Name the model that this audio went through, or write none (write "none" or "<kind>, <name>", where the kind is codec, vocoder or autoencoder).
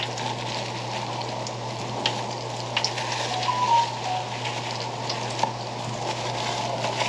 none